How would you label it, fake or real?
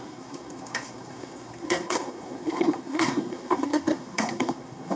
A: fake